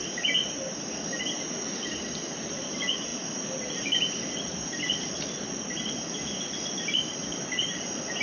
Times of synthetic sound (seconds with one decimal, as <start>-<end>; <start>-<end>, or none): none